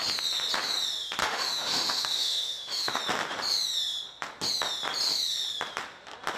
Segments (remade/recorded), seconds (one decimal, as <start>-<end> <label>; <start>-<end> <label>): 0.0-1.2 recorded; 1.2-3.0 remade; 3.0-6.4 recorded